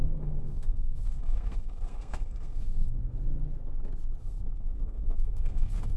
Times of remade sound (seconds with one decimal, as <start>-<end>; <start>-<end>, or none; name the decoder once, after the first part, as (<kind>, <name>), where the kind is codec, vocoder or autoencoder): 0.0-3.0 (codec, SNAC); 4.2-6.0